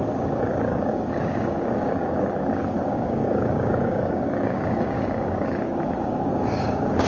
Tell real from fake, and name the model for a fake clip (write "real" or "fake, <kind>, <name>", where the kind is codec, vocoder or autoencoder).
fake, codec, DAC